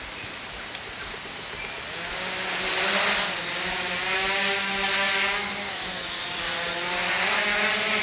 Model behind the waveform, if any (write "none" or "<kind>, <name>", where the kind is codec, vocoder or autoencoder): none